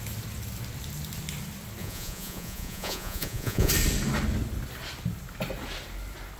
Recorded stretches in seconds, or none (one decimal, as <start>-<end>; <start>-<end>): 0.0-1.8; 3.7-6.4